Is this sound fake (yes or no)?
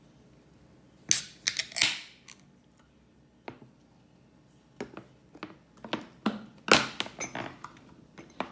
no